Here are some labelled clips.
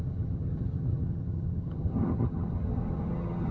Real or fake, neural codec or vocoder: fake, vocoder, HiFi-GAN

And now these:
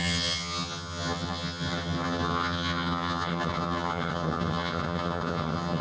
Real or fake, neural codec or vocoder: fake, vocoder, HiFi-GAN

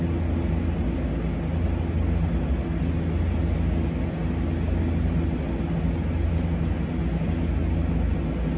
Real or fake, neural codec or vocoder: real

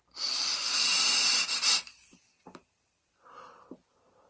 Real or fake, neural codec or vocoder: real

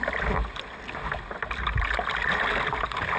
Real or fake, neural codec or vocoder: real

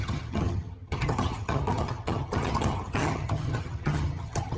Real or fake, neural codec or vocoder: fake, vocoder, HiFi-GAN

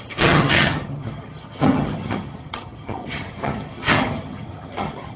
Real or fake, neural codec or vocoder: fake, vocoder, HiFi-GAN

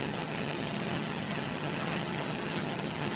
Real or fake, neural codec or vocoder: fake, vocoder, HiFi-GAN